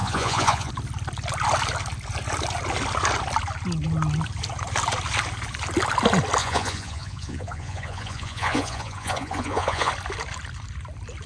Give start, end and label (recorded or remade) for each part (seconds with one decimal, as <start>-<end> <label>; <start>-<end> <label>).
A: 0.0-0.7 remade; 0.7-6.4 recorded; 6.4-9.9 remade; 9.9-11.3 recorded